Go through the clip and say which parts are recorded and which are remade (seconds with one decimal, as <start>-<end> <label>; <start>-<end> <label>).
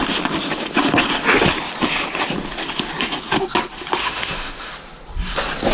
0.0-4.0 recorded; 4.0-4.7 remade; 4.7-5.7 recorded